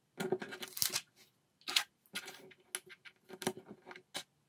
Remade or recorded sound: recorded